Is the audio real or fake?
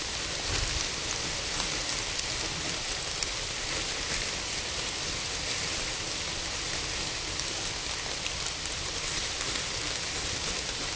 real